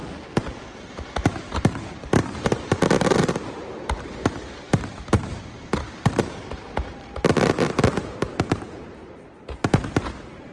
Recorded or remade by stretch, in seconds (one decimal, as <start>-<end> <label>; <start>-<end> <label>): 0.0-0.8 recorded; 0.8-10.5 remade

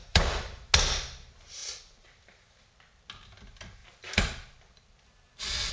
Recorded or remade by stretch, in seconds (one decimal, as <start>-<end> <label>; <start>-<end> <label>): 0.0-0.7 remade; 0.7-5.7 recorded

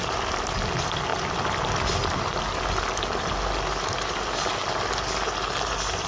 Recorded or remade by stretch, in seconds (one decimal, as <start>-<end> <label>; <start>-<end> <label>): 0.0-6.1 recorded